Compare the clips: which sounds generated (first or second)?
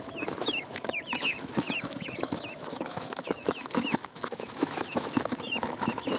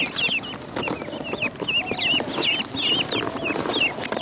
first